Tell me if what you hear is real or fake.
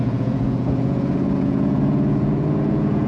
fake